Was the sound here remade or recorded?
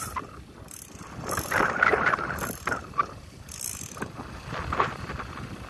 recorded